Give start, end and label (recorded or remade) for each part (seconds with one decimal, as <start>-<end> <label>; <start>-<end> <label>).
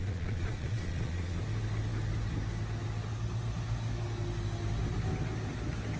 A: 0.0-1.4 remade; 1.4-6.0 recorded